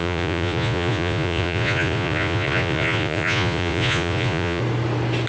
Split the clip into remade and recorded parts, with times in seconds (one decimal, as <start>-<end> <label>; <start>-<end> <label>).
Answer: 0.0-4.6 remade; 4.6-5.3 recorded